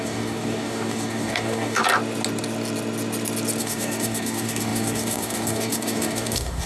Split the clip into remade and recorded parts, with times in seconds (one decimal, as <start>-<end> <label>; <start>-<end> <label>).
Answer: 0.0-1.8 remade; 1.8-3.6 recorded; 3.6-6.7 remade